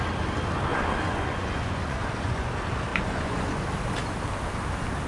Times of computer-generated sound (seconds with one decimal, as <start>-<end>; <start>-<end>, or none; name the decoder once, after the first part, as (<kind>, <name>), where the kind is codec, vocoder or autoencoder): 0.7-2.5 (vocoder, Vocos); 2.9-3.7